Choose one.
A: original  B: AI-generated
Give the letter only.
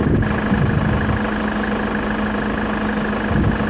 A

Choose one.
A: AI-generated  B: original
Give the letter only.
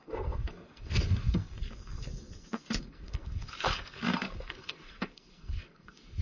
A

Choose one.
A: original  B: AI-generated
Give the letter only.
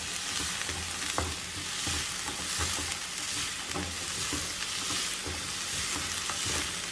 A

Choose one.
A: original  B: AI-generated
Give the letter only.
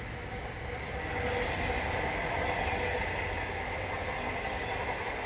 A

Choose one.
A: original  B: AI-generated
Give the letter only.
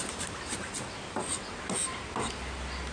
A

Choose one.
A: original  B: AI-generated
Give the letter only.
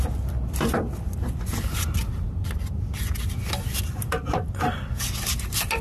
A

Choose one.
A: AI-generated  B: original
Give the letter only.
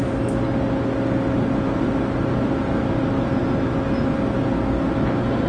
B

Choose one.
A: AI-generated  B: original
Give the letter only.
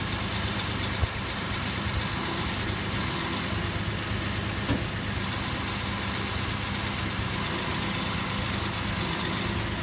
B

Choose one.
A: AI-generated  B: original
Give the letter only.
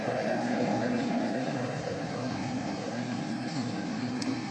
A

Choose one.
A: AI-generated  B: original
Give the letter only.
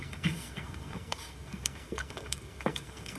A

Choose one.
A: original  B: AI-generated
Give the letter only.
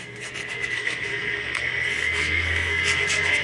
B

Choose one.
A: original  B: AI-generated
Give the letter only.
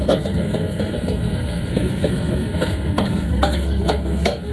B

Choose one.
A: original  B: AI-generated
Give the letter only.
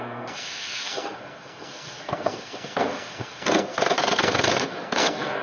B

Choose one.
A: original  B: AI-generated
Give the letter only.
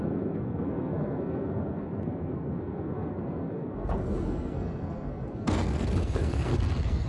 B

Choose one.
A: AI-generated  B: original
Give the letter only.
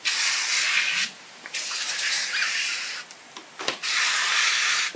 B